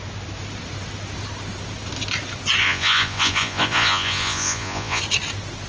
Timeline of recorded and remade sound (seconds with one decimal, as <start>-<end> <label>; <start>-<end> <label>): 0.0-2.6 recorded; 2.6-5.0 remade; 5.0-5.7 recorded